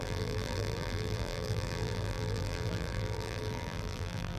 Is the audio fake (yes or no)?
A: yes